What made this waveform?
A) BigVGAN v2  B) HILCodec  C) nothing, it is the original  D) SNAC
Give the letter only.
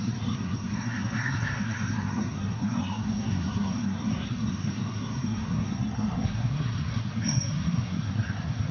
D